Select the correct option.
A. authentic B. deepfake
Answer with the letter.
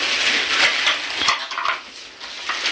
A